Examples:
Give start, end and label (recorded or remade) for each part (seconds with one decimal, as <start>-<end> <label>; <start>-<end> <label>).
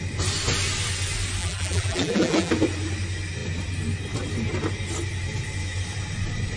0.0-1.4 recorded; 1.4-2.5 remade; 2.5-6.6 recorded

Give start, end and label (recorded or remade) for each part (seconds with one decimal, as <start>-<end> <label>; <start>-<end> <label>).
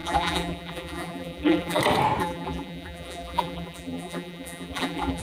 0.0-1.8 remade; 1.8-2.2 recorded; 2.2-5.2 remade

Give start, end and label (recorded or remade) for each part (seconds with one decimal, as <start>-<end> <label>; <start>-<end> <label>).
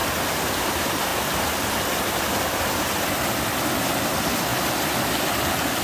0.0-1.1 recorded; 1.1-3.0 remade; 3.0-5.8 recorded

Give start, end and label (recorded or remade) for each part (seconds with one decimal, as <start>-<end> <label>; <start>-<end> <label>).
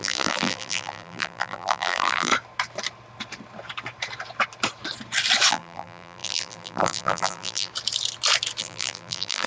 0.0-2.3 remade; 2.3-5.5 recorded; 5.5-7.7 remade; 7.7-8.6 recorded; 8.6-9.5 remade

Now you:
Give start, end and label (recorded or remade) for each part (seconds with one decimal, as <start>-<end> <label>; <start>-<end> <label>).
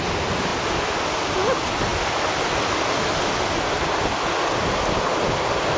0.0-5.8 recorded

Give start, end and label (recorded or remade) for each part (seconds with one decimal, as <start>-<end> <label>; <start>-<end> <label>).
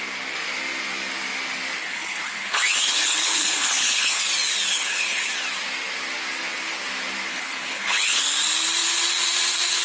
0.0-1.8 recorded; 1.8-4.2 remade; 4.2-4.7 recorded; 4.7-5.3 remade; 5.3-7.3 recorded; 7.3-8.2 remade; 8.2-9.8 recorded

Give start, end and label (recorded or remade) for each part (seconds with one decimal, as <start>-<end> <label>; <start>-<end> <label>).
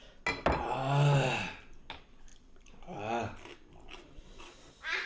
0.0-2.3 recorded; 2.3-4.4 remade; 4.4-5.1 recorded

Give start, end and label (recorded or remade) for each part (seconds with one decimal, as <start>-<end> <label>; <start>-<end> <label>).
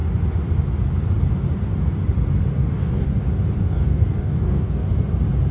0.0-2.6 recorded; 2.6-3.1 remade; 3.1-3.6 recorded; 3.6-4.9 remade; 4.9-5.5 recorded